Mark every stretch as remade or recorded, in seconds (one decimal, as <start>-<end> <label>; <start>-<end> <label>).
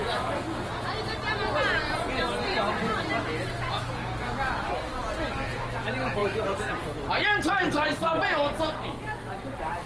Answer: 0.0-6.2 recorded; 6.2-8.1 remade; 8.1-9.9 recorded